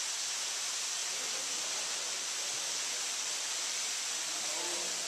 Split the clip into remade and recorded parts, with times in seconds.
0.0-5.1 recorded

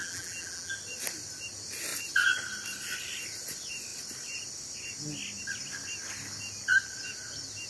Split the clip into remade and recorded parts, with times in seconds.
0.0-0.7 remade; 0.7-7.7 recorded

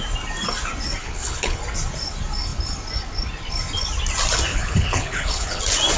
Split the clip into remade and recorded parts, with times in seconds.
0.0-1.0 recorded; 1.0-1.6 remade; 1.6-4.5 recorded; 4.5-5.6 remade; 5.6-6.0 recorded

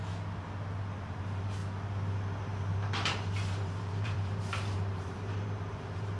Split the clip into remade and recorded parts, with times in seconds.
0.0-1.2 recorded; 1.2-1.6 remade; 1.6-2.4 recorded; 2.4-6.2 remade

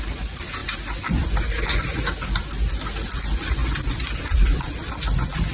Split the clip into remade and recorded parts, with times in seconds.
0.0-5.5 recorded

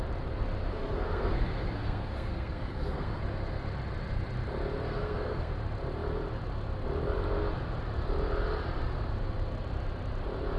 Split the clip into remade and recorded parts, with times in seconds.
0.0-0.7 recorded; 0.7-3.2 remade; 3.2-4.9 recorded; 4.9-5.5 remade; 5.5-10.6 recorded